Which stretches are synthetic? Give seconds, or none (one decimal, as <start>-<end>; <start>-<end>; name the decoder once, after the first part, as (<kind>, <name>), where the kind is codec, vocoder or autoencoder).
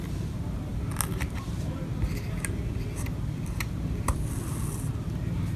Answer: none